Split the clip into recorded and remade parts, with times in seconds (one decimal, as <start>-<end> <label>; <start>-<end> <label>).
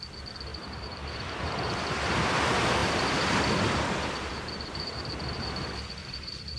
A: 0.0-0.5 recorded; 0.5-1.6 remade; 1.6-2.8 recorded; 2.8-3.4 remade; 3.4-4.3 recorded; 4.3-5.0 remade; 5.0-6.0 recorded; 6.0-6.6 remade